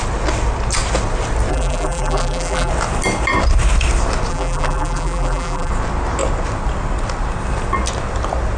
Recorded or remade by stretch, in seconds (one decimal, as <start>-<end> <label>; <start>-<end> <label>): 0.0-1.5 recorded; 1.5-2.7 remade; 2.7-4.3 recorded; 4.3-5.7 remade; 5.7-8.6 recorded